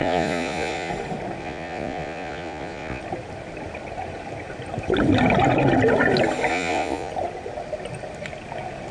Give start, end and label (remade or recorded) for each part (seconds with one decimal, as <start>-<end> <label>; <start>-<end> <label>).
0.0-0.9 remade; 0.9-1.4 recorded; 1.4-3.0 remade; 3.0-6.5 recorded; 6.5-7.1 remade; 7.1-8.9 recorded